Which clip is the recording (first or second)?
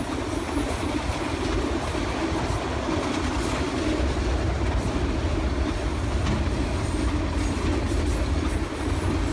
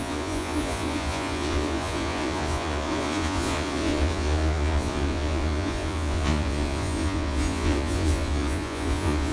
first